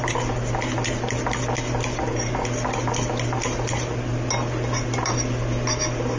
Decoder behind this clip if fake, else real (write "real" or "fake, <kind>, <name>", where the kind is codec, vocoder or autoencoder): real